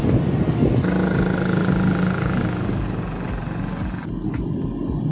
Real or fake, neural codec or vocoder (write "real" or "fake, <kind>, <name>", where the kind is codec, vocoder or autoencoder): real